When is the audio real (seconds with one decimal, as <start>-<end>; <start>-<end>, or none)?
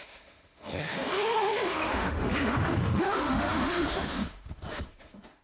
none